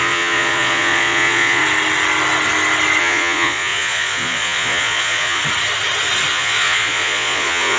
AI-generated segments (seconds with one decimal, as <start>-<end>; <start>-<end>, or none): 0.0-1.6; 3.0-5.4; 6.3-7.8